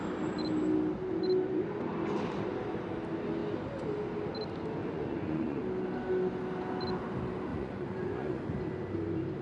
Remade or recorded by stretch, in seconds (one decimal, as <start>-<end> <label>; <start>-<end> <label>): 0.0-4.8 recorded; 4.8-5.6 remade; 5.6-7.5 recorded; 7.5-8.4 remade; 8.4-9.4 recorded